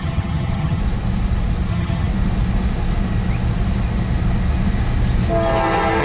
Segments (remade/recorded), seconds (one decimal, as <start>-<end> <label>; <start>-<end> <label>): 0.0-0.8 remade; 0.8-1.7 recorded; 1.7-2.1 remade; 2.1-6.0 recorded